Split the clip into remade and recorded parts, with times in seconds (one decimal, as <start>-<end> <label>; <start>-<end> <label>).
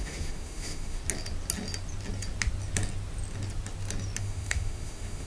0.0-1.0 remade; 1.0-4.2 recorded; 4.2-5.3 remade